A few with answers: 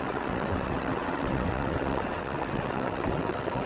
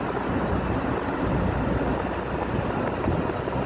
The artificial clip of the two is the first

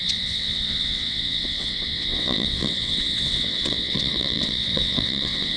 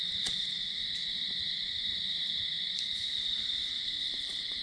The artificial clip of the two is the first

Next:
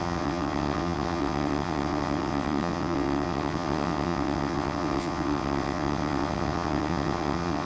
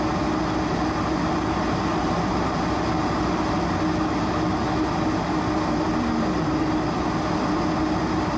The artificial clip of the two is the first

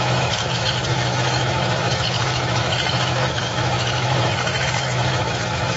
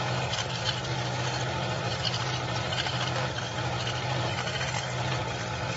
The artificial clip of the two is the first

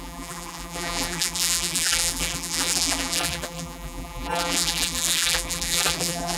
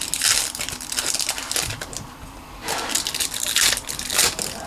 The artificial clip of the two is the first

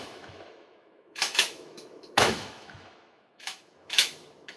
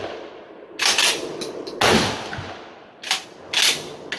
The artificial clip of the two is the first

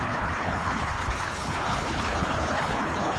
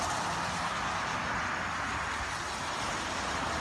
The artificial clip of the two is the first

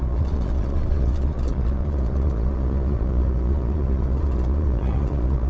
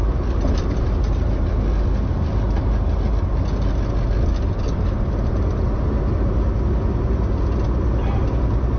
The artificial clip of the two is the first